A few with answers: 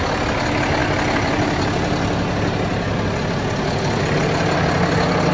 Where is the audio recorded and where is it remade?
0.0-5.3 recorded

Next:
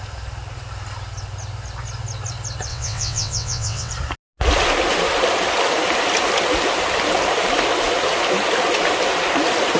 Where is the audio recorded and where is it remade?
0.0-2.7 recorded; 2.7-3.9 remade; 3.9-9.8 recorded

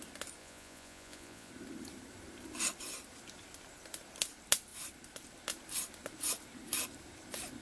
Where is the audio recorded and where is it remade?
0.0-0.4 recorded; 0.4-1.5 remade; 1.5-7.6 recorded